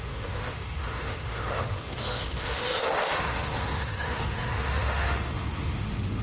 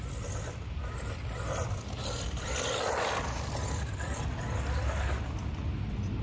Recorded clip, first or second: second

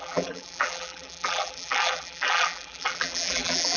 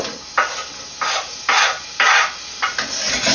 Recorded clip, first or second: second